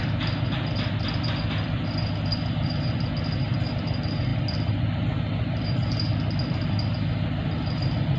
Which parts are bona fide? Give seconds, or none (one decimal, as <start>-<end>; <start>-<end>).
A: 0.0-8.2